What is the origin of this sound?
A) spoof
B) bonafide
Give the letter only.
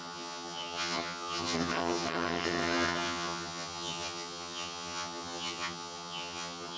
A